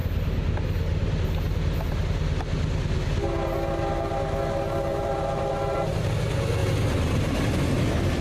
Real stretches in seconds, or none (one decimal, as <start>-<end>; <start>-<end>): 0.0-4.9; 6.1-8.2

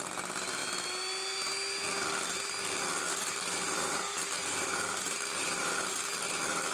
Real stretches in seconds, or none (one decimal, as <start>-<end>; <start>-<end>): 0.0-3.1; 6.0-6.7

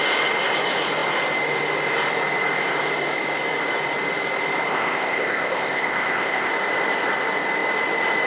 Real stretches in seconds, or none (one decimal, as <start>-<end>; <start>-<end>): 0.0-4.7; 6.5-8.3